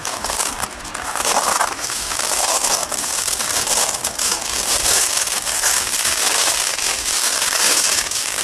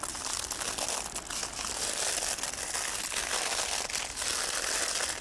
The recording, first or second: second